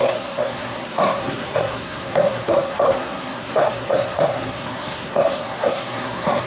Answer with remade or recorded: remade